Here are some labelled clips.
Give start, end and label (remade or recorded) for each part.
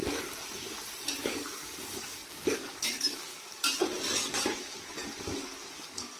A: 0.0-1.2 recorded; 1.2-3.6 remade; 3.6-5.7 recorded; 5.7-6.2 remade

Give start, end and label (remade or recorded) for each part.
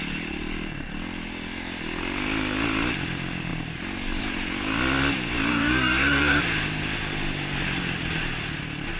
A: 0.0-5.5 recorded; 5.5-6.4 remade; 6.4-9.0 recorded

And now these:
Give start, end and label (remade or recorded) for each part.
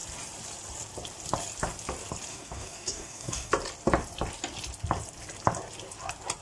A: 0.0-2.3 recorded; 2.3-3.5 remade; 3.5-6.4 recorded